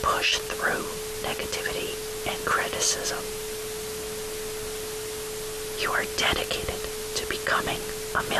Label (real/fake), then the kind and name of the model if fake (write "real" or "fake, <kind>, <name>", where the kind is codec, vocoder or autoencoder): real